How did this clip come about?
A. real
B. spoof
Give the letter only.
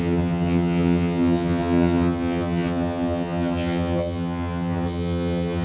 B